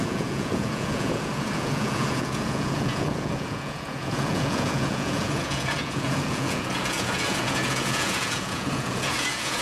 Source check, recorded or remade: remade